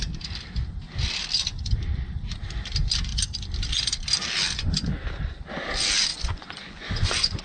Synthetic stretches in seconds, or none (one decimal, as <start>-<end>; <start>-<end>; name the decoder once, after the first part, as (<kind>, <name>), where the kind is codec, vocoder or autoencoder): 6.1-7.4 (vocoder, Vocos)